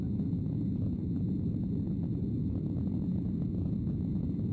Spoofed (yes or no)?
no